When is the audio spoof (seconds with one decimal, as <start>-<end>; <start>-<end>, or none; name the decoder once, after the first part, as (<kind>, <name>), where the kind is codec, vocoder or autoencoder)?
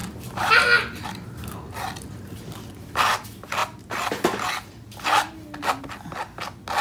0.0-0.5 (vocoder, BigVGAN v2)